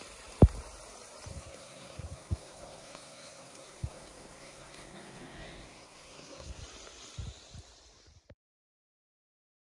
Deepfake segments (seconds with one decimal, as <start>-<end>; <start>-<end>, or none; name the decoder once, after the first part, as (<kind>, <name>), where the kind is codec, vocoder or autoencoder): 1.3-6.6 (codec, SNAC)

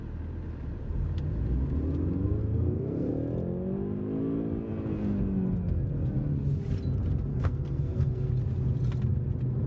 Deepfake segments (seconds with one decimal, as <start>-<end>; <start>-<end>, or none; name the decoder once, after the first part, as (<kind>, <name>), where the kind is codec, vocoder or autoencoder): 2.4-3.1 (codec, SNAC); 7.3-8.3

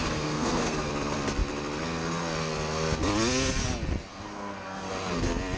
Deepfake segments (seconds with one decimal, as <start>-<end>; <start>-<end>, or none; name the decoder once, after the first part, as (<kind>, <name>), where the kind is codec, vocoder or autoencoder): 0.0-0.9 (codec, SNAC); 4.1-4.9

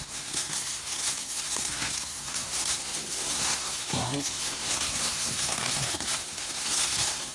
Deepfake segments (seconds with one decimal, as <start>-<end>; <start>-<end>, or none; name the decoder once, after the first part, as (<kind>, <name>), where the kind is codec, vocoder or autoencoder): 0.0-7.3 (codec, SNAC)

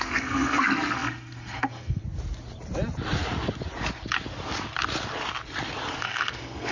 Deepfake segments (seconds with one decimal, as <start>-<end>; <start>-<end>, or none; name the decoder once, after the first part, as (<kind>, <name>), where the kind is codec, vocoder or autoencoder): 0.0-2.0 (codec, SNAC); 6.0-6.7